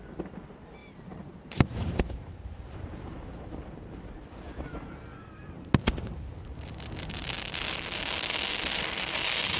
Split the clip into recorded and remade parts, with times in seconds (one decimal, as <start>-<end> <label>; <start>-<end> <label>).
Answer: 0.0-0.8 recorded; 0.8-5.7 remade; 5.7-9.6 recorded